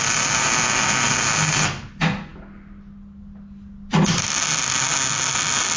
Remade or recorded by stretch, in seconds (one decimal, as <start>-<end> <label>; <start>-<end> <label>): 0.0-5.8 recorded